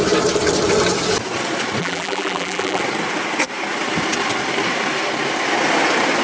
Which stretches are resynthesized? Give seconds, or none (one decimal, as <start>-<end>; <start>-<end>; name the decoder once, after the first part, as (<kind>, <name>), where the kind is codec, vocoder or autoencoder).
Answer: 1.8-2.8 (vocoder, BigVGAN v2)